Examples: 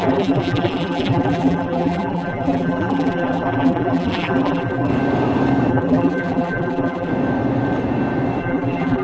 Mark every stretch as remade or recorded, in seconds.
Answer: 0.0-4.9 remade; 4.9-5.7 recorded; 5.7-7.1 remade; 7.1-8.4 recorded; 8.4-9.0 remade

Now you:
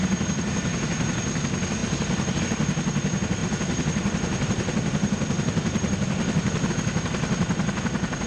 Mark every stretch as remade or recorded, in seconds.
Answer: 0.0-3.4 recorded; 3.4-6.7 remade; 6.7-8.3 recorded

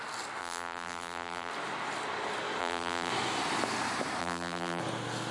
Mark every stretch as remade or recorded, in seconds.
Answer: 0.0-0.4 recorded; 0.4-1.5 remade; 1.5-2.6 recorded; 2.6-3.1 remade; 3.1-4.2 recorded; 4.2-4.8 remade; 4.8-5.3 recorded

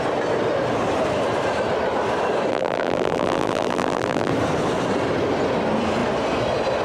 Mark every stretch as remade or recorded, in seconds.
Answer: 0.0-2.5 recorded; 2.5-4.3 remade; 4.3-6.8 recorded